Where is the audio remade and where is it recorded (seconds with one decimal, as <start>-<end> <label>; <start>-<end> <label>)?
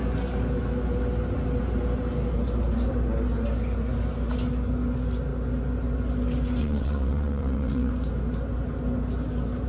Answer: 0.0-6.6 recorded; 6.6-7.9 remade; 7.9-9.7 recorded